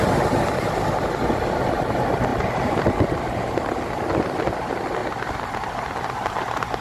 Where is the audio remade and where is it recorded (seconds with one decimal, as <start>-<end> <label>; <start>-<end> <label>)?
0.0-5.0 remade; 5.0-5.9 recorded; 5.9-6.8 remade